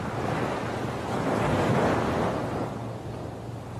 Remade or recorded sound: recorded